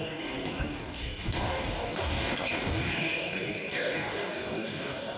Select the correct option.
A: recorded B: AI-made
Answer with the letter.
B